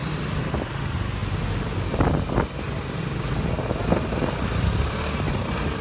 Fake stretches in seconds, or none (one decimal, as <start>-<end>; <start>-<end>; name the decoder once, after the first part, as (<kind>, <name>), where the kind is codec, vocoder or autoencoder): none